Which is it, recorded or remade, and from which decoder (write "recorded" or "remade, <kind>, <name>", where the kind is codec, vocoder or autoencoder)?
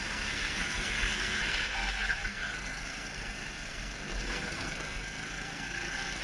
remade, codec, SNAC